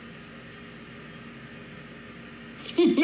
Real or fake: real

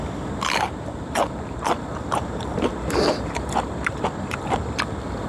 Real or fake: fake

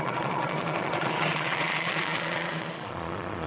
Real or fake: fake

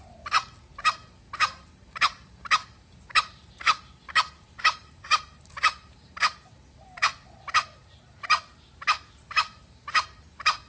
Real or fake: fake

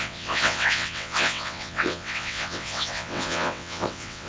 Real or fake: fake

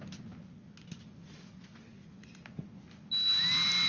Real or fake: real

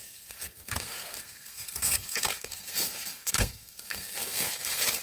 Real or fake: fake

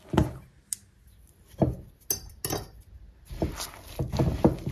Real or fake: real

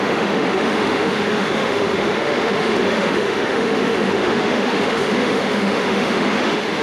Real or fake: fake